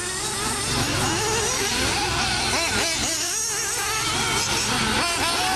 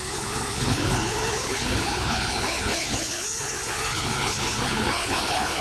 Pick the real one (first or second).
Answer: first